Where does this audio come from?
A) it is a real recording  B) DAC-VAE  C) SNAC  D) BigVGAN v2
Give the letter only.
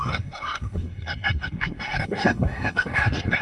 C